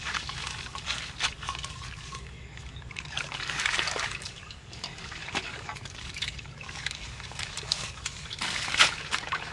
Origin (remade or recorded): remade